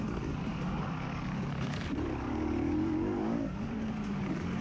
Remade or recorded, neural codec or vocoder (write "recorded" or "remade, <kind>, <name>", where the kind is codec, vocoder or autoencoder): remade, codec, DAC